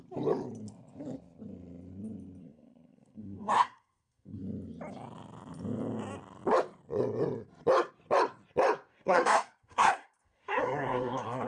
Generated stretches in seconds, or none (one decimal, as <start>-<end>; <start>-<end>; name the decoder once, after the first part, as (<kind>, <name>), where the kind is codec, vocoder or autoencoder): 2.4-4.4 (codec, SNAC); 8.9-11.5